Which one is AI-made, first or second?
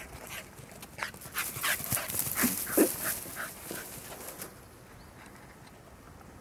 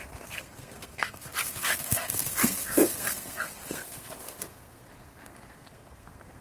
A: second